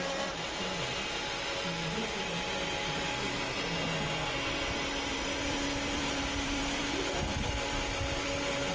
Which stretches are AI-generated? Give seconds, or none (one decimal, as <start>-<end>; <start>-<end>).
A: 5.1-6.8